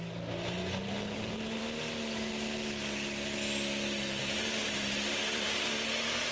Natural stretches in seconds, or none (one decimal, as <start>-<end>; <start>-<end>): 0.0-5.2; 5.7-6.3